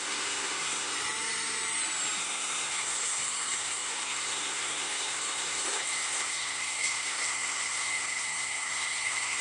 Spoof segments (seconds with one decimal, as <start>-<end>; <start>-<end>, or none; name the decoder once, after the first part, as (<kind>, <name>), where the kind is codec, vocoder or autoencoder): 0.0-0.9 (codec, SNAC); 2.2-9.4